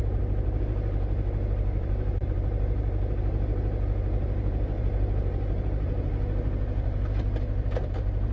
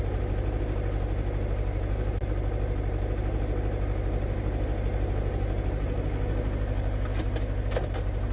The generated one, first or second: first